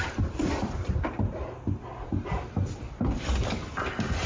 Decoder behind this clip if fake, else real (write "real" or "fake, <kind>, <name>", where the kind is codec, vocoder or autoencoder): real